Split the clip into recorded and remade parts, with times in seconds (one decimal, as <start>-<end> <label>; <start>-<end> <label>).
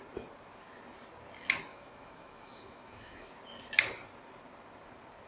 0.0-1.7 recorded; 1.7-3.3 remade; 3.3-5.3 recorded